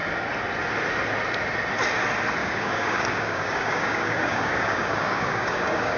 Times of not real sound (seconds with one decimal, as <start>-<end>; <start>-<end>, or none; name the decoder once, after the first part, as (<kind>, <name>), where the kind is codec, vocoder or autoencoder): 2.4-6.0 (codec, DAC)